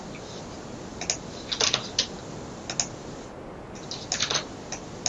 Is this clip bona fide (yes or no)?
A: yes